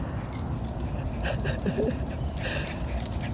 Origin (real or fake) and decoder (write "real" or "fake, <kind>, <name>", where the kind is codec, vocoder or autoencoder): real